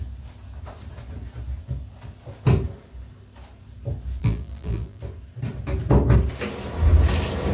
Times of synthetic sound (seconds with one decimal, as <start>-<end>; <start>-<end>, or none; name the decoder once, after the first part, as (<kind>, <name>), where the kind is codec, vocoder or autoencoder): 4.2-5.0 (vocoder, BigVGAN v2)